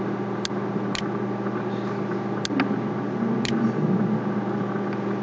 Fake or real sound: real